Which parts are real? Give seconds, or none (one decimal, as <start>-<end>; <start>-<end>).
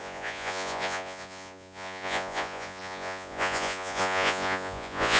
none